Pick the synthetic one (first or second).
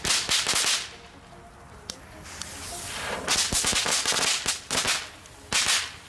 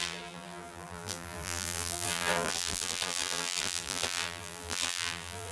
second